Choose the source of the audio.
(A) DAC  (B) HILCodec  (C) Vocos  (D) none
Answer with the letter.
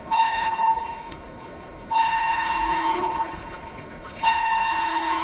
B